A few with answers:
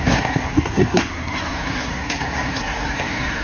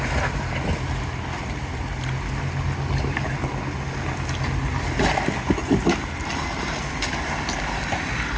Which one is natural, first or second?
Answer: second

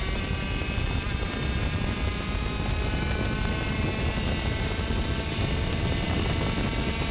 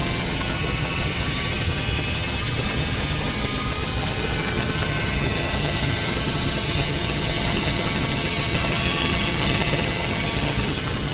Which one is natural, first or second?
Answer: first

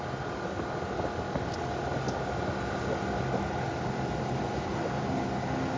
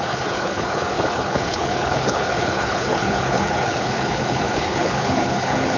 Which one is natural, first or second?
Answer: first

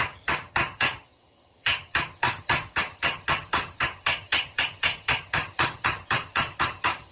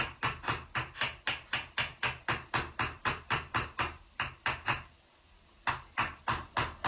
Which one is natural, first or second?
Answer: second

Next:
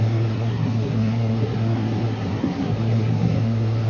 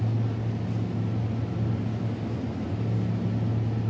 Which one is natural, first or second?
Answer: second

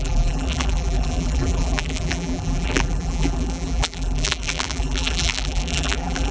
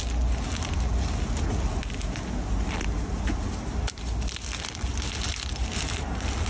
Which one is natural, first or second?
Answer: second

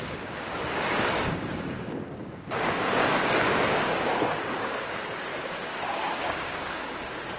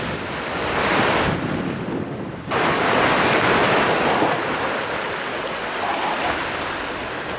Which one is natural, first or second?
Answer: second